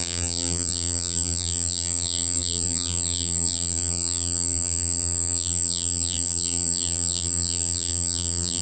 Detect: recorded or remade remade